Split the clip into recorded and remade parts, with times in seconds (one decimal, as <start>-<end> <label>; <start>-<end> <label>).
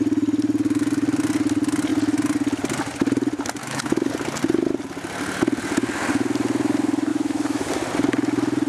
0.0-3.6 recorded; 3.6-4.1 remade; 4.1-7.1 recorded; 7.1-7.7 remade; 7.7-8.7 recorded